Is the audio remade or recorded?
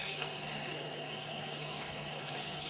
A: remade